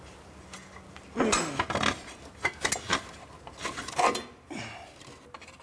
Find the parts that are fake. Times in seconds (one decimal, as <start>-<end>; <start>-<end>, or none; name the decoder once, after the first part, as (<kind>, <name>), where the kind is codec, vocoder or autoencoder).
none